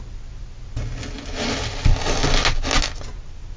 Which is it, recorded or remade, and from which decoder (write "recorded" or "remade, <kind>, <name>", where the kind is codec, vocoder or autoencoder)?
recorded